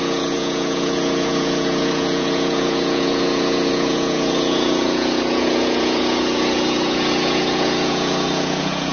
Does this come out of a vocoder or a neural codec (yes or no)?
yes